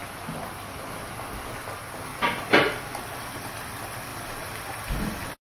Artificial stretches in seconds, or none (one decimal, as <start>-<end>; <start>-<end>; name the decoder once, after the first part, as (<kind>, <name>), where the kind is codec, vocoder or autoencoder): 4.1-5.4 (vocoder, BigVGAN v2)